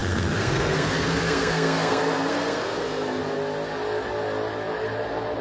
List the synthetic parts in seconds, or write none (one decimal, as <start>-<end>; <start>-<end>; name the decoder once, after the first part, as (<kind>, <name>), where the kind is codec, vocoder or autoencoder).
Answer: 0.0-3.2 (codec, SNAC)